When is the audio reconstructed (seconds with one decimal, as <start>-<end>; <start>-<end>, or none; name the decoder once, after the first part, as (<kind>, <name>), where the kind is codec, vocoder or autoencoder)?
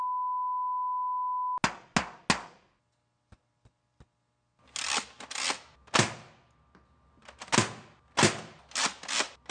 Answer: none